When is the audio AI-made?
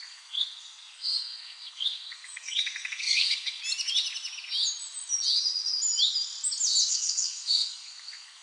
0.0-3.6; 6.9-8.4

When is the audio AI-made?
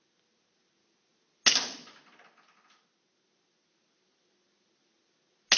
none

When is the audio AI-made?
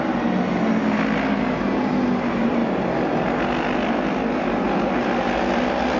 none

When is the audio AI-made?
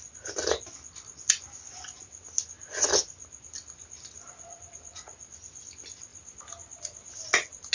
6.1-7.7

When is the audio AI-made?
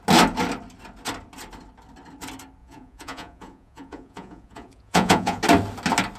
2.6-5.4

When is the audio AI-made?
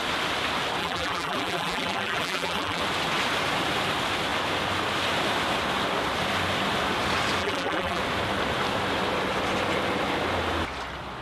0.8-2.8; 7.4-8.0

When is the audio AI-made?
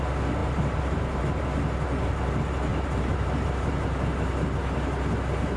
0.4-1.2; 2.7-3.7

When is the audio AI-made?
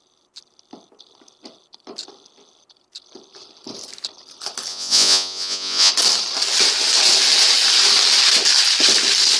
4.7-5.9